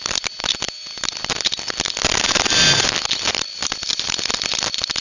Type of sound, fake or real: real